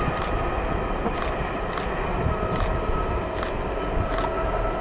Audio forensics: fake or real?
real